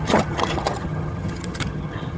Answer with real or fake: fake